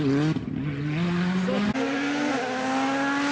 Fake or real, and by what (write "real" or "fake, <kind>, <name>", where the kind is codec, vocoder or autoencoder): real